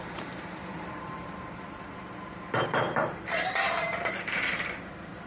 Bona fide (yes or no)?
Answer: no